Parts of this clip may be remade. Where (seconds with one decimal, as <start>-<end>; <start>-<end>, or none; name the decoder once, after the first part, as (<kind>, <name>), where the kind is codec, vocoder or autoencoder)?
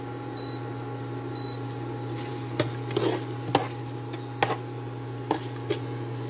none